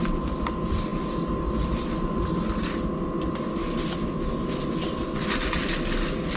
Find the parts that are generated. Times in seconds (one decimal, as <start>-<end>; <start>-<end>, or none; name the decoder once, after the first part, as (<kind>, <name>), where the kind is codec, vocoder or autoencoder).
3.6-4.8 (autoencoder, DAC-VAE)